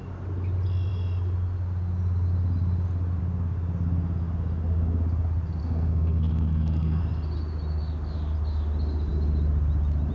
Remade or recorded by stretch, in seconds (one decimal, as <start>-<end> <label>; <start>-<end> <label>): 0.0-5.6 recorded; 5.6-7.0 remade; 7.0-10.1 recorded